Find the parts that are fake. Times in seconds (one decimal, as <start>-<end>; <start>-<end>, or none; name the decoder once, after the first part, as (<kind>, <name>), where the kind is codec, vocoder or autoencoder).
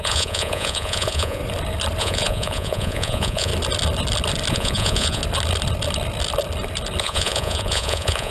0.0-1.4 (vocoder, Vocos); 2.0-3.5; 4.5-5.2; 7.0-8.3